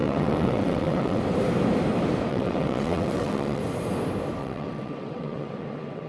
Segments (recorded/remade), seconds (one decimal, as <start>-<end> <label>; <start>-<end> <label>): 0.0-1.2 remade; 1.2-2.3 recorded; 2.3-3.6 remade; 3.6-4.4 recorded; 4.4-6.1 remade